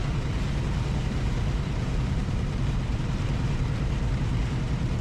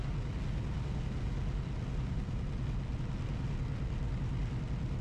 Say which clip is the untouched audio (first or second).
second